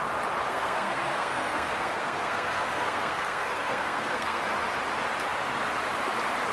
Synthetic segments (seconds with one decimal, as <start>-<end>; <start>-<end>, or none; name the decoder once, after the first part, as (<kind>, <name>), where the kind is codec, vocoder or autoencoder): 0.5-4.4 (codec, SNAC)